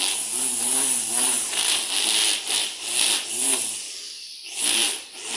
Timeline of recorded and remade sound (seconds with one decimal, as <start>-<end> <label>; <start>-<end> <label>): 0.0-5.4 recorded